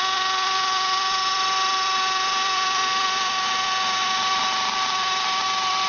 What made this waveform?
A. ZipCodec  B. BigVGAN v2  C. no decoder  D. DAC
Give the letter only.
B